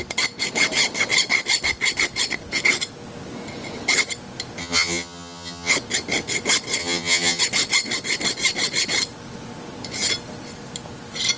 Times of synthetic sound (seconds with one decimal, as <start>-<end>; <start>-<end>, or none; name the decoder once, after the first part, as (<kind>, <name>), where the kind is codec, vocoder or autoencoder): 4.6-5.7 (vocoder, HiFi-GAN); 6.8-7.4